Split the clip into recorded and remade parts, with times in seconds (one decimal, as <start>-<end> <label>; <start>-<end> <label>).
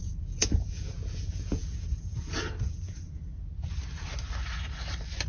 0.0-3.2 remade; 3.2-5.3 recorded